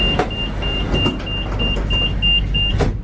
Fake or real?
real